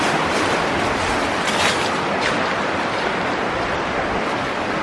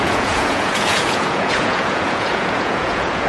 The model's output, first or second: second